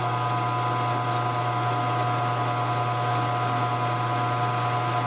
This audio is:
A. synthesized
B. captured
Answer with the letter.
B